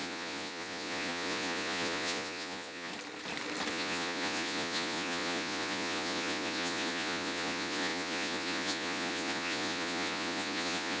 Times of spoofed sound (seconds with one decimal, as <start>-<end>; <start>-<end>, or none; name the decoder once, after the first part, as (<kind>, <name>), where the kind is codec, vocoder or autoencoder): 0.0-2.9 (vocoder, Vocos); 3.7-11.0